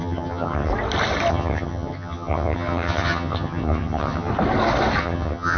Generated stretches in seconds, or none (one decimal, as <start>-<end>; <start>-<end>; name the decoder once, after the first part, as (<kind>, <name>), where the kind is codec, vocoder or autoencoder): 0.0-0.7 (vocoder, HiFi-GAN); 1.3-4.3; 5.0-5.6